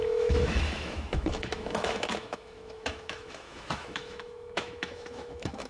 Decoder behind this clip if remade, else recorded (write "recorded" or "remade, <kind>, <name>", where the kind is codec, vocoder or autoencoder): remade, autoencoder, DAC-VAE